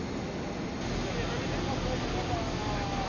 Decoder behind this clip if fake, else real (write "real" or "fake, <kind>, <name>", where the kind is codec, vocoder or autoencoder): real